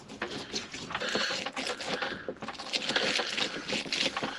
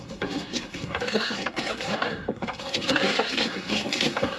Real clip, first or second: first